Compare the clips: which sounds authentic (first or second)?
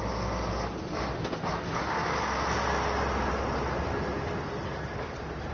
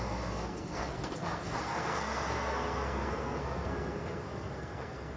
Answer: first